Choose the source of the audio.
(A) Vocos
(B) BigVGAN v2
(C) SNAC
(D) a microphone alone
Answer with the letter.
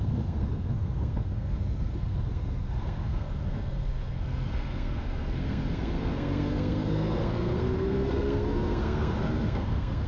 C